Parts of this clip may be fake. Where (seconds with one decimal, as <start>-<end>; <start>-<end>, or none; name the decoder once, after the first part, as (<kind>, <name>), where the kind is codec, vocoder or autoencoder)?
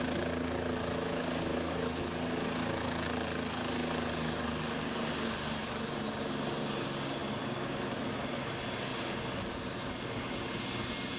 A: 1.5-2.1 (autoencoder, DAC-VAE); 7.2-8.5